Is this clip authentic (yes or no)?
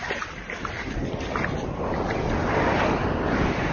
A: yes